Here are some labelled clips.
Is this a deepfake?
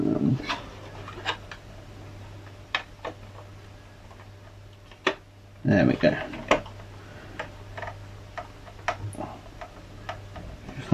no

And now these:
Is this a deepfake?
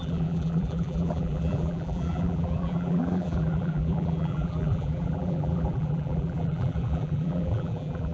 yes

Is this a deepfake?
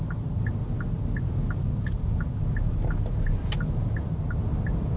no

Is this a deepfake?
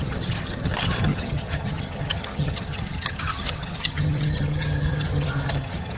yes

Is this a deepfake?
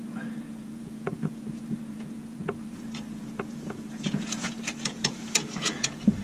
yes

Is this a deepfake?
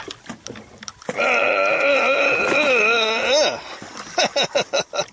no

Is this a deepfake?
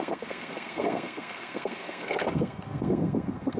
yes